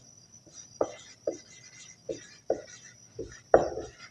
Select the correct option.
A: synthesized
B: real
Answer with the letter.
B